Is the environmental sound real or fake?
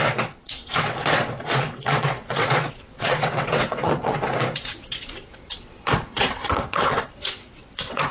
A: fake